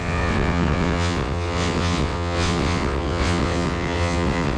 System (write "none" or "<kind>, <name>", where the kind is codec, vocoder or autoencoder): vocoder, WaveNeXt